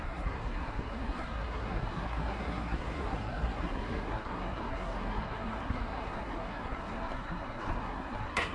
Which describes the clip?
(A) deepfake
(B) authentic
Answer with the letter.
A